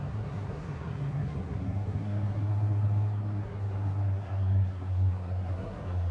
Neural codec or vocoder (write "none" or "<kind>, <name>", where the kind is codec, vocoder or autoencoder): codec, SNAC